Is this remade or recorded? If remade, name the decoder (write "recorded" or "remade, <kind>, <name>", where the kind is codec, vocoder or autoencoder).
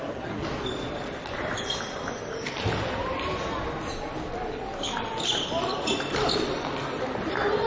recorded